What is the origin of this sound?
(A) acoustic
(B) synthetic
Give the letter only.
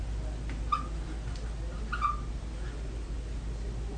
A